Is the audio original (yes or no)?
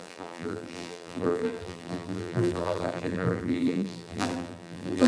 no